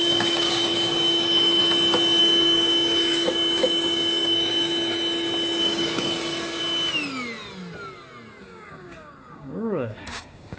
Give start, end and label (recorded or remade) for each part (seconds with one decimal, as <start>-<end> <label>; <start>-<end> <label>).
0.0-1.6 remade; 1.6-2.2 recorded; 2.2-4.7 remade; 4.7-5.6 recorded; 5.6-6.6 remade; 6.6-8.4 recorded; 8.4-10.6 remade